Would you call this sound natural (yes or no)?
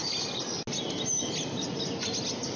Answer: yes